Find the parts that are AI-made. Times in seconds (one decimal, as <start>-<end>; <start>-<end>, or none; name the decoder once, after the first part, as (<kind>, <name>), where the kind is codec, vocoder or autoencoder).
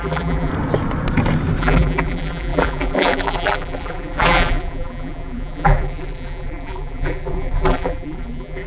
0.0-0.5 (vocoder, BigVGAN v2); 1.6-8.7